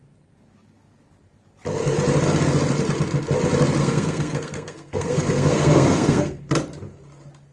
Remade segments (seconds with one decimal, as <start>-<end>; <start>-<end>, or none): 3.8-6.4